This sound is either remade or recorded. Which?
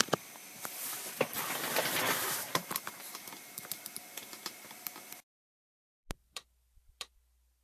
remade